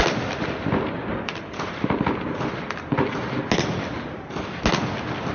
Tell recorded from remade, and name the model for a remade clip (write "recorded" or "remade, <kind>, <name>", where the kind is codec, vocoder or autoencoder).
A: recorded